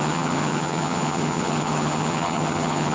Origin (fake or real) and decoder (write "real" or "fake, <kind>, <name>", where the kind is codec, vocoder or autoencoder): fake, vocoder, HiFi-GAN